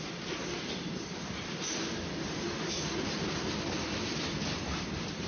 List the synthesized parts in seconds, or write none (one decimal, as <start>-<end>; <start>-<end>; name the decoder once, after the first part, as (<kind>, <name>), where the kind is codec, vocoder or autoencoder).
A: 4.3-5.3 (vocoder, BigVGAN v2)